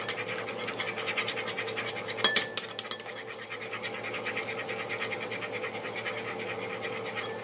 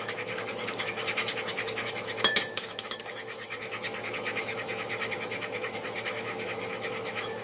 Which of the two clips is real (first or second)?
first